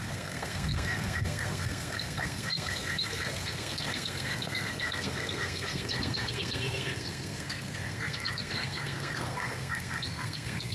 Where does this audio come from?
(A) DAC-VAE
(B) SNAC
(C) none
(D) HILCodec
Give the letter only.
B